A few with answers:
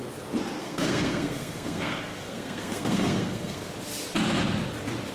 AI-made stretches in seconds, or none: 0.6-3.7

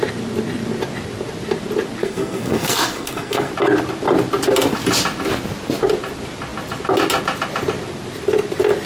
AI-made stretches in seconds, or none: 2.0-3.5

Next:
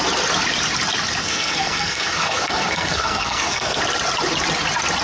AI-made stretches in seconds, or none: 1.2-3.8

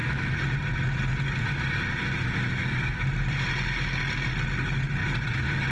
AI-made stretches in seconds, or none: 2.5-3.0